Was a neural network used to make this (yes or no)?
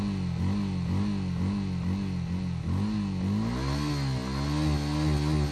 no